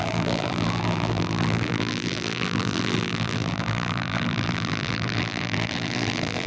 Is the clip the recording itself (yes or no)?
no